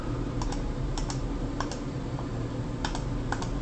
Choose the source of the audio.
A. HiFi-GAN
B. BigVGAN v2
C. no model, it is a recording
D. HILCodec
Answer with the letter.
B